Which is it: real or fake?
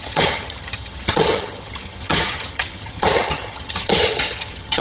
fake